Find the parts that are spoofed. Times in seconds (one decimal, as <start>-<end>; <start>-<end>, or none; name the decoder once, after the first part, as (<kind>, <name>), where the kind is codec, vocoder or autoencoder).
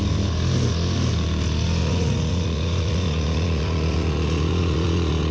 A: 1.8-5.3 (vocoder, Vocos)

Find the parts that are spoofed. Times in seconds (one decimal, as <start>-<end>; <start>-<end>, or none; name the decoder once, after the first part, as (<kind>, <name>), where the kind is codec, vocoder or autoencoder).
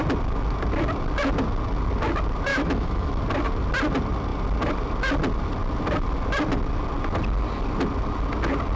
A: 2.5-3.2 (autoencoder, DAC-VAE)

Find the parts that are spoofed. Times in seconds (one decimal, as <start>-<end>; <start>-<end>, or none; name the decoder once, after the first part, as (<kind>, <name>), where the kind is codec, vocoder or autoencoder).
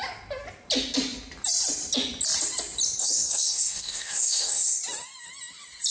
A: 3.0-4.8 (codec, SNAC)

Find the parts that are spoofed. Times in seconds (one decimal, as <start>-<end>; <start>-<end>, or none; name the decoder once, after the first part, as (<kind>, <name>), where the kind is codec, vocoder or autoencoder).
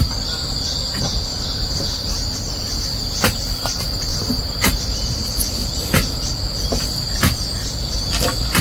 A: 1.3-2.1 (vocoder, BigVGAN v2); 4.1-5.1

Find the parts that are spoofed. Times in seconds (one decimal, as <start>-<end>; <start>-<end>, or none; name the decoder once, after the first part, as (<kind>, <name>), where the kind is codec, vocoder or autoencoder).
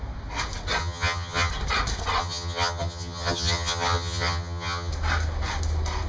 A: 0.8-1.5 (vocoder, HiFi-GAN); 2.2-4.9